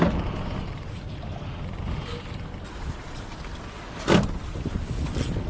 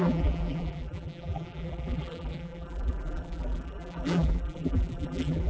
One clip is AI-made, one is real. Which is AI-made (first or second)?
second